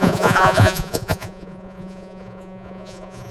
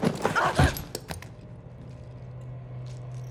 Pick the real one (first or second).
second